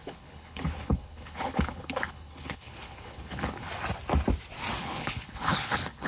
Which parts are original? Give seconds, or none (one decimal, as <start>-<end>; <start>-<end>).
3.7-4.8